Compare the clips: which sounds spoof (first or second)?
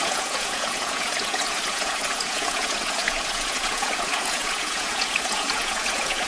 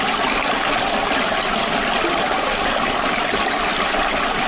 first